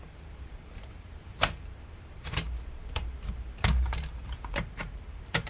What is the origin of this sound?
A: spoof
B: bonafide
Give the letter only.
A